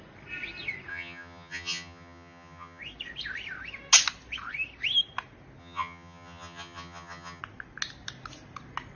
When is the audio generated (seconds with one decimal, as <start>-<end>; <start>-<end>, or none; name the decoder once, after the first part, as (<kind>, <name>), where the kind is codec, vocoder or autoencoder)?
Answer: 0.9-2.8 (vocoder, HiFi-GAN); 5.6-7.4